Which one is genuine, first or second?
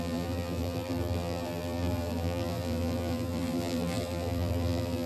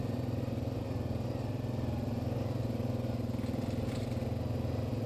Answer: second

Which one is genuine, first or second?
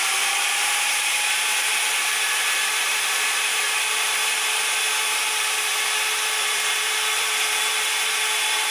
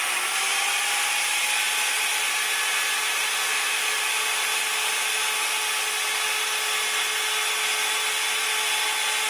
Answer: second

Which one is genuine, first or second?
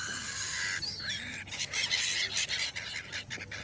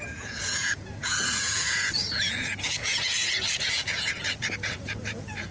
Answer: first